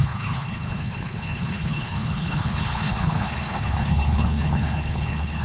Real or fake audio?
fake